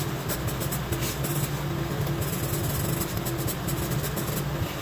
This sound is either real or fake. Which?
real